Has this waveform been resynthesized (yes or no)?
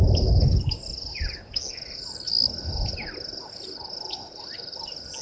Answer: no